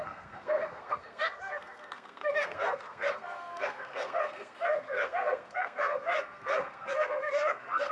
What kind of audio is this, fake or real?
fake